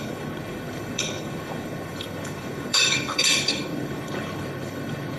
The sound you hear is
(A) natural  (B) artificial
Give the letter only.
B